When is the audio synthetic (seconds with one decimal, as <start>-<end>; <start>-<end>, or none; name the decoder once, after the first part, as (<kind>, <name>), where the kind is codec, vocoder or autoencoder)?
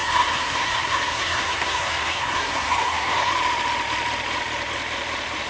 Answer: 0.0-3.3 (codec, SNAC)